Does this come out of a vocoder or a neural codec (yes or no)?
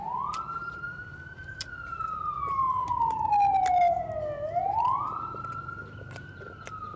no